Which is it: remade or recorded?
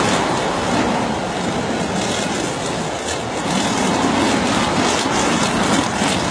recorded